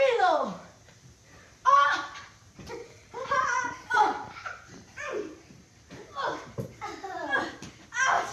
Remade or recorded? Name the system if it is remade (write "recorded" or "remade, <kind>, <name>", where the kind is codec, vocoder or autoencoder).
remade, vocoder, BigVGAN v2